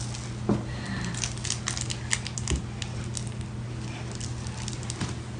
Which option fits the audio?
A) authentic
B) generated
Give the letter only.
A